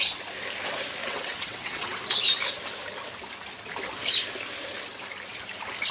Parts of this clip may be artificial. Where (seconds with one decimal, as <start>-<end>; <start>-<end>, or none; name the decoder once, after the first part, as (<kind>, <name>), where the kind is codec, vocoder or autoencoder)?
1.0-2.0 (vocoder, WaveNeXt)